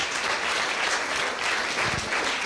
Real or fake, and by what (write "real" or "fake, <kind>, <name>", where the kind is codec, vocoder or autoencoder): real